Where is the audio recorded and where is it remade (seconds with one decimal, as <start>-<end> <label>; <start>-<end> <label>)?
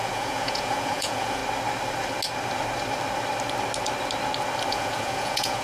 0.0-1.4 remade; 1.4-4.7 recorded; 4.7-5.6 remade